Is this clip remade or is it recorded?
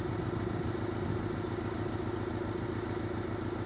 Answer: recorded